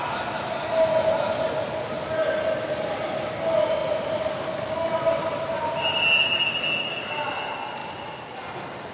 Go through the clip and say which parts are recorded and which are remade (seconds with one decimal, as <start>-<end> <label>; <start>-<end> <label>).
0.0-8.9 recorded